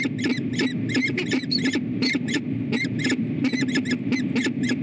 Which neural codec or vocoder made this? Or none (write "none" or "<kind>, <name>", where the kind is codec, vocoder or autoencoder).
none